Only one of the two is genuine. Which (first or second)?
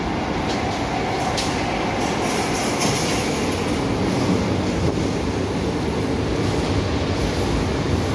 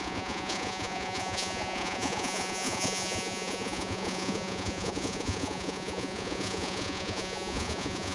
first